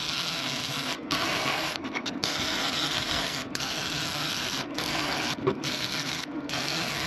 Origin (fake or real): fake